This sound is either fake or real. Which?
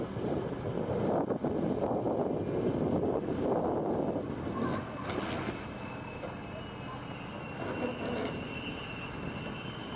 real